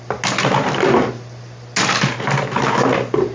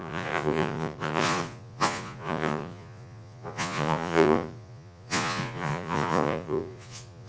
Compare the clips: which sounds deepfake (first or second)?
second